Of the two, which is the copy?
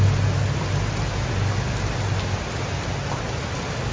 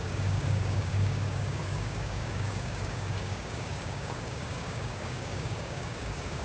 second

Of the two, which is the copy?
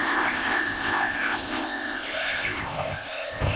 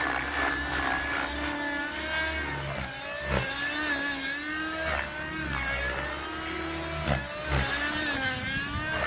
first